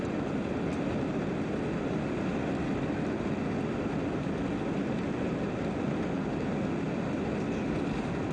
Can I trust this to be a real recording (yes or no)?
yes